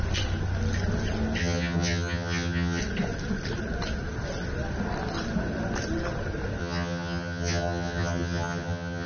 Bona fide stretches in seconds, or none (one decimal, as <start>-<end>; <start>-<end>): 0.0-1.4; 2.8-6.6

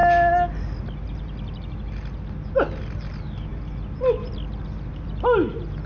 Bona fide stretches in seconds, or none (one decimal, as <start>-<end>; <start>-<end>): 0.0-5.9

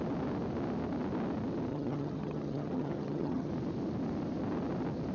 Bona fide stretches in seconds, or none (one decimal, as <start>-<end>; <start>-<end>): 0.0-1.7; 3.5-5.1

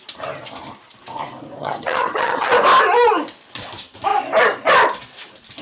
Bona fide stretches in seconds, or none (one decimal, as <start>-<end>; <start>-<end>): 0.0-1.6; 2.5-5.6

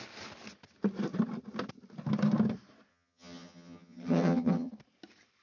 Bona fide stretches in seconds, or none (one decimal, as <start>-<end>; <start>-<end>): 0.0-2.9; 4.7-5.4

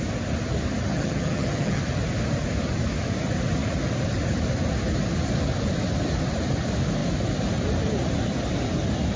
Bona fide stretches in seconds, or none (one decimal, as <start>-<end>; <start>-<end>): 0.0-0.9; 1.8-9.2

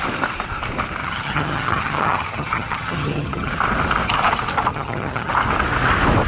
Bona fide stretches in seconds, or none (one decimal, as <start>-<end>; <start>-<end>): 0.0-1.0; 3.5-4.7; 5.3-6.3

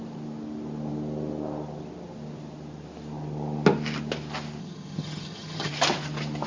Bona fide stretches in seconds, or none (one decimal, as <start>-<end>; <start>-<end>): 0.0-4.6; 5.7-6.5